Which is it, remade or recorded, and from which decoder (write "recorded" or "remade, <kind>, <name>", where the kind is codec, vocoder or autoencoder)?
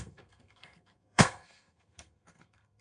remade, codec, SNAC